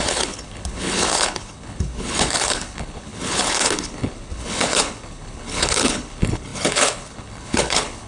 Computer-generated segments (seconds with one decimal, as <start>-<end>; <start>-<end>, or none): 0.0-8.1